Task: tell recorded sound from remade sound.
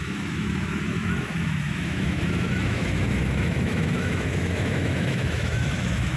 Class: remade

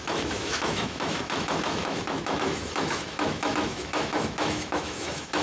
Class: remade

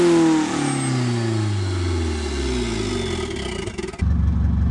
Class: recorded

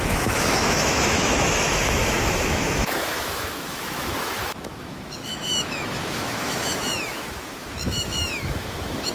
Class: remade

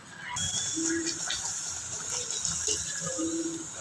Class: recorded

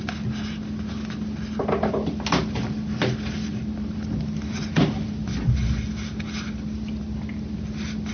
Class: recorded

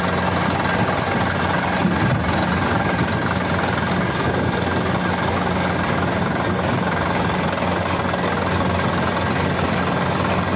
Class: recorded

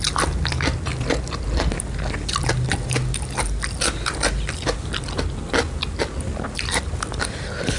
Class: recorded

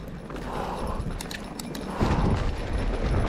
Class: recorded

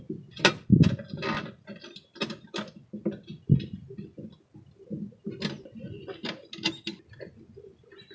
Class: recorded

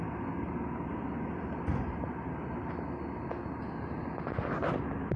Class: recorded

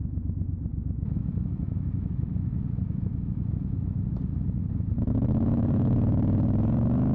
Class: remade